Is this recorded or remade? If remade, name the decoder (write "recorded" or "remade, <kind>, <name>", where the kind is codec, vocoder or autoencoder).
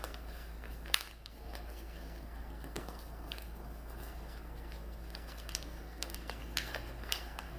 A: remade, codec, SNAC